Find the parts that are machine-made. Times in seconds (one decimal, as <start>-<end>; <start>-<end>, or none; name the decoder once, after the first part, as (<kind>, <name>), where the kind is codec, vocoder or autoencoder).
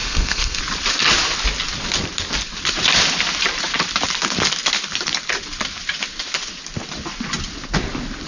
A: 0.0-0.6 (codec, SNAC)